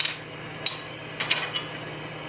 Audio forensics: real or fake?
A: real